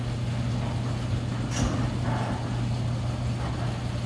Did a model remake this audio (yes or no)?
no